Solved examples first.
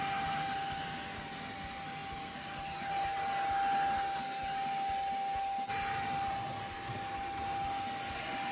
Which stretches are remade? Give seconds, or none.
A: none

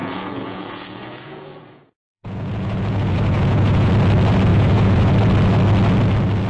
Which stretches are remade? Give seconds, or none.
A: 0.0-3.9 (vocoder, Vocos); 4.5-5.1

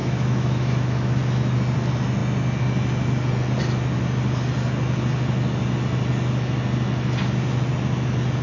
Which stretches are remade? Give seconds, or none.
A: 0.0-1.2 (autoencoder, DAC-VAE)